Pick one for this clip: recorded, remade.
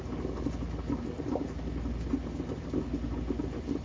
recorded